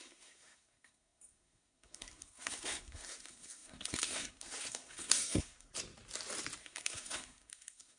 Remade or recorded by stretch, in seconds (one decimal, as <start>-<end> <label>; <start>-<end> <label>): 0.0-5.7 remade; 5.7-6.6 recorded; 6.6-8.0 remade